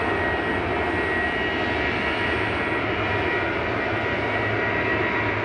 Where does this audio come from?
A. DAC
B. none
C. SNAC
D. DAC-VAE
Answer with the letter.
B